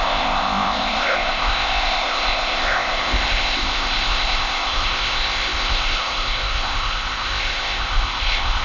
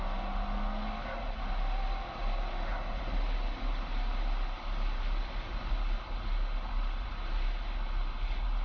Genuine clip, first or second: second